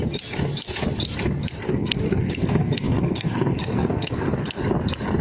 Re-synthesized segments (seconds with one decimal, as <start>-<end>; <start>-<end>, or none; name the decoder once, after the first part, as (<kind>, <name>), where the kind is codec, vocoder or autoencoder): 1.7-4.6 (codec, SNAC)

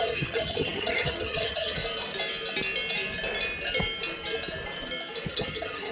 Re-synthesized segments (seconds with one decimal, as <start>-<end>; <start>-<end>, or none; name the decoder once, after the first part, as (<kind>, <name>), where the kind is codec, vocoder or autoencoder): 0.0-1.8 (vocoder, HiFi-GAN); 5.3-5.9

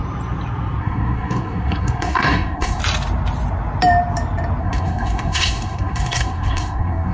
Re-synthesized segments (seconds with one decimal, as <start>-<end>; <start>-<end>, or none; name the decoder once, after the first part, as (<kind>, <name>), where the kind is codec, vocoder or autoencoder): 0.8-2.8 (codec, SNAC); 4.6-7.1

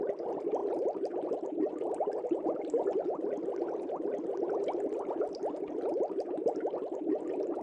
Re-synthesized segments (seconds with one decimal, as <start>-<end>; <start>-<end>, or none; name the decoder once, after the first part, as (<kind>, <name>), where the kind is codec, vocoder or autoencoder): none